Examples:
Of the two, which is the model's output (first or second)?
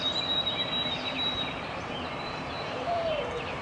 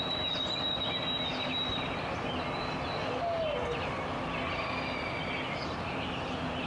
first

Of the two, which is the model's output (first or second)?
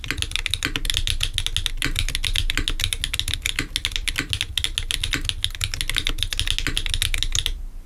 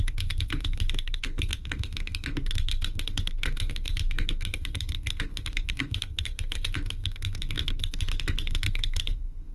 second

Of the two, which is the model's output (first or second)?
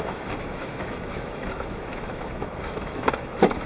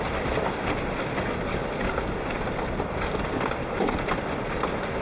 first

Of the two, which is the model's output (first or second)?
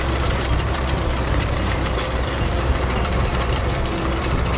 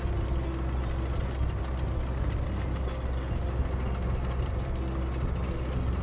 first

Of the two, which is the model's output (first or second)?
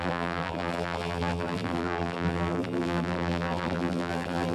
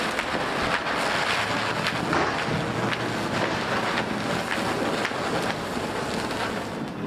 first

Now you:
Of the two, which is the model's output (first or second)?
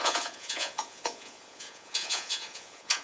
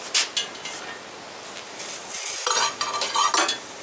first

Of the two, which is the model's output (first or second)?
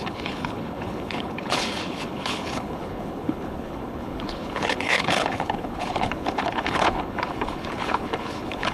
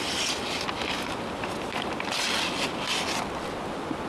first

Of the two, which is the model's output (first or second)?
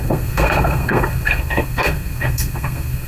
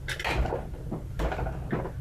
first